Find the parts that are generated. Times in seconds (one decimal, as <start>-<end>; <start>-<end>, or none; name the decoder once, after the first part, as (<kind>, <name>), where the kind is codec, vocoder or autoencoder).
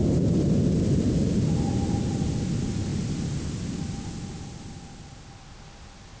none